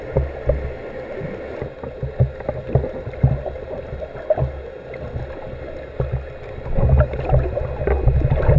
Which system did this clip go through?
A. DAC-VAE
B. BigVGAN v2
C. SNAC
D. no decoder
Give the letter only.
D